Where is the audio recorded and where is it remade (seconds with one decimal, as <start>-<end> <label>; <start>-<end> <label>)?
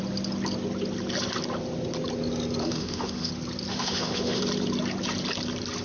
0.0-2.6 recorded; 2.6-3.3 remade; 3.3-3.7 recorded; 3.7-4.4 remade; 4.4-5.8 recorded